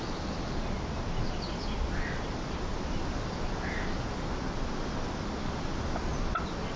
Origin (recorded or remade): recorded